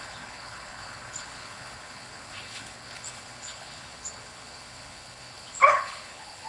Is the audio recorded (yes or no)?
no